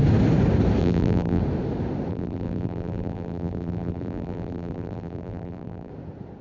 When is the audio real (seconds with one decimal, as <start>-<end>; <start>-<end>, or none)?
0.0-0.8; 1.4-2.1; 5.9-6.4